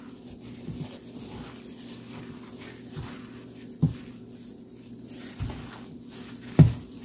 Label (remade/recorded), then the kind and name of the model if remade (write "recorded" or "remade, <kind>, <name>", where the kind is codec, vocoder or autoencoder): recorded